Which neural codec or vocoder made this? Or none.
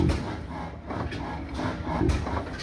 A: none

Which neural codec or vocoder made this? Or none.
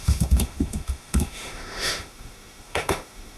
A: autoencoder, DAC-VAE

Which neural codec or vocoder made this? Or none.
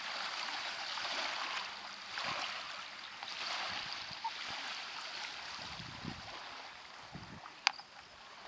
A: none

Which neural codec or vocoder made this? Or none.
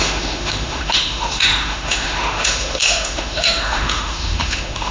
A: autoencoder, DAC-VAE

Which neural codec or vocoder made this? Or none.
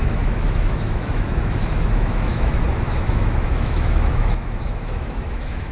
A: autoencoder, DAC-VAE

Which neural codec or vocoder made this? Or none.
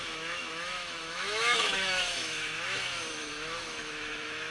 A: autoencoder, DAC-VAE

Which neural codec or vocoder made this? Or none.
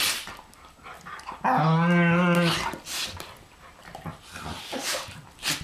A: none